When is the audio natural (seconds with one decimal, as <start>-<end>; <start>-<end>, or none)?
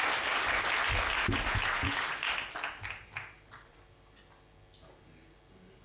0.0-5.8